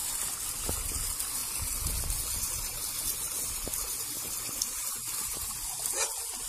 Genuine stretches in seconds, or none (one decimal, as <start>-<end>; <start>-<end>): 0.0-6.5

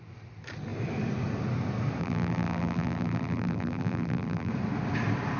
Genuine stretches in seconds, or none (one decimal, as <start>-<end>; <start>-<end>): 0.0-2.0; 4.5-5.4

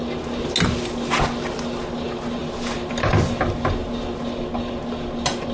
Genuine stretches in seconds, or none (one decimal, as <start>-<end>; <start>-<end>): 0.0-2.4; 2.9-5.5

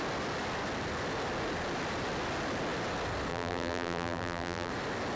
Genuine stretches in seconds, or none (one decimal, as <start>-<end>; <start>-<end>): 0.0-3.3; 4.7-5.2

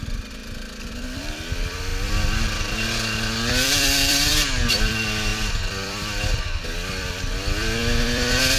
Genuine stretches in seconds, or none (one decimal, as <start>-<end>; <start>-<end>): none

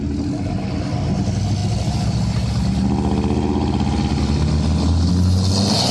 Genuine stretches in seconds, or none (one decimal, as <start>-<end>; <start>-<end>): 0.0-5.9

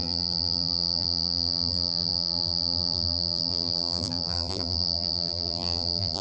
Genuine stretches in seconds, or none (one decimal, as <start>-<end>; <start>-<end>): none